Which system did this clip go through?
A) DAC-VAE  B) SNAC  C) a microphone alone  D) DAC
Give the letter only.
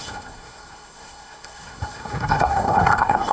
B